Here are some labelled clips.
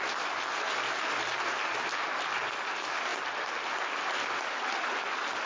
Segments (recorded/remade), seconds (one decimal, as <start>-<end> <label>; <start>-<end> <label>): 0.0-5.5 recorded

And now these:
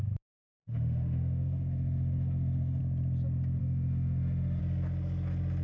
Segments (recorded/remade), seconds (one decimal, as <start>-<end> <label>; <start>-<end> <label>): 0.0-0.4 recorded; 0.4-2.8 remade; 2.8-3.6 recorded; 3.6-4.6 remade; 4.6-5.6 recorded

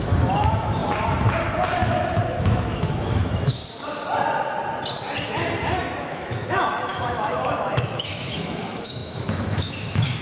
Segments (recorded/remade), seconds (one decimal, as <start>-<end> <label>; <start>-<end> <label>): 0.0-0.8 remade; 0.8-1.8 recorded; 1.8-3.6 remade; 3.6-6.0 recorded; 6.0-10.2 remade

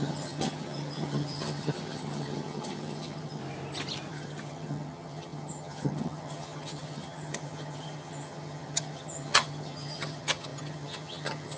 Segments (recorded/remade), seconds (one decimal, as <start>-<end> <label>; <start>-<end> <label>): 0.0-3.4 remade; 3.4-4.1 recorded; 4.1-11.6 remade